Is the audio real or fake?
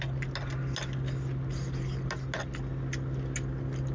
real